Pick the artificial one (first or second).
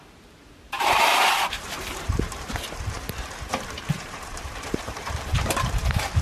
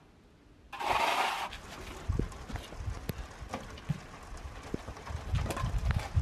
first